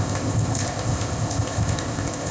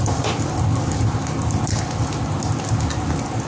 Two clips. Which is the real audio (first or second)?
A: second